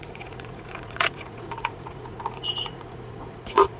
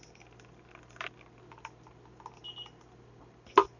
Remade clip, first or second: first